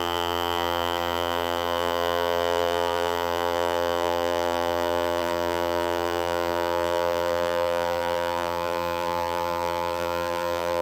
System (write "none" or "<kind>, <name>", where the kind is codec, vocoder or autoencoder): vocoder, BigVGAN v2